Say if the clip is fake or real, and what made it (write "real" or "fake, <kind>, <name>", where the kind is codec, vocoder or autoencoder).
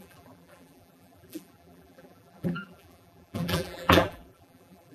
fake, vocoder, BigVGAN v2